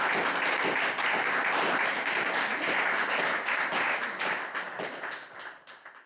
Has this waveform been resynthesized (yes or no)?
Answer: no